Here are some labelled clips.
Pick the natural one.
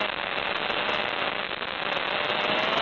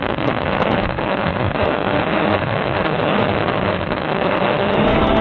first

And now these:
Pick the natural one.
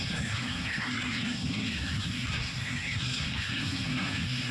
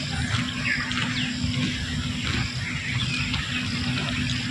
second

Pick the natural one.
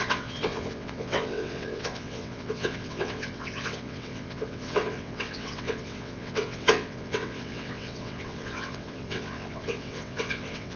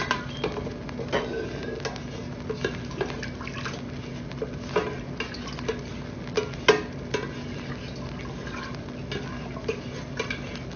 second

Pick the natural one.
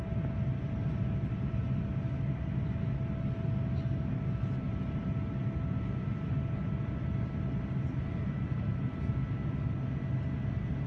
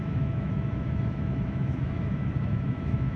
first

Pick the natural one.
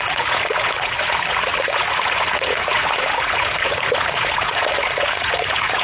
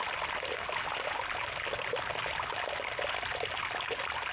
second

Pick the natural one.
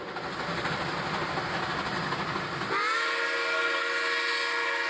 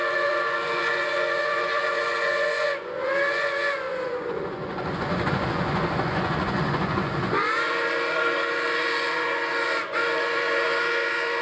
first